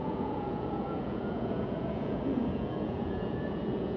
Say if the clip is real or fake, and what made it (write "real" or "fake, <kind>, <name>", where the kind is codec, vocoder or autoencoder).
fake, vocoder, Vocos